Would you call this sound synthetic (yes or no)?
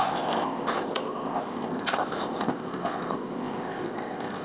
yes